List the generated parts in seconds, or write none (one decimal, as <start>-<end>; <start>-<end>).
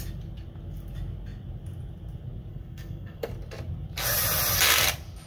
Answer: 2.5-3.3